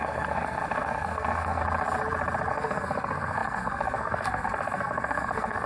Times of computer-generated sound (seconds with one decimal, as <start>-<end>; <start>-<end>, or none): 0.0-1.6; 2.5-5.7